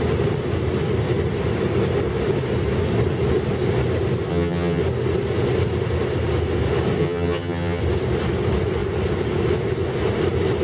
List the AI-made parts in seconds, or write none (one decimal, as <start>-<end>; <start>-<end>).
4.3-4.8; 7.0-7.8